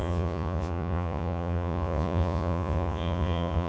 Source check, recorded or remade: remade